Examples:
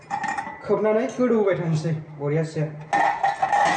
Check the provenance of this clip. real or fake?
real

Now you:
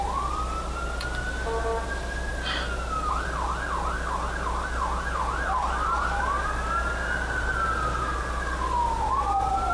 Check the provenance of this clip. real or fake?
real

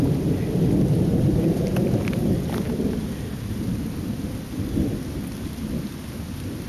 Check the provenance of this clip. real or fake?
fake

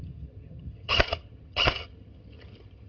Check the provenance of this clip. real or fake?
fake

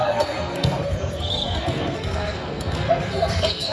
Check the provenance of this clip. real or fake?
fake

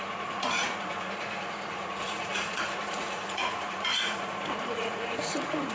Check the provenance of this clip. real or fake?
fake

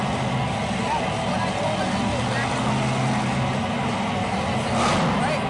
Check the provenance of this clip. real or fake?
real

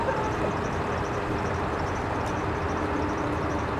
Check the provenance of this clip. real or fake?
real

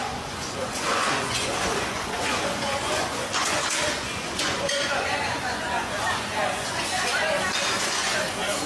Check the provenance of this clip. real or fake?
fake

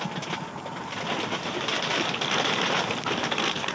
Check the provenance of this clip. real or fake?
real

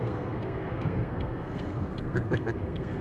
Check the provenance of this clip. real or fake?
fake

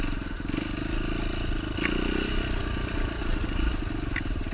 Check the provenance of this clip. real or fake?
real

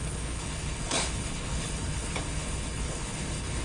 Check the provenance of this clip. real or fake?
fake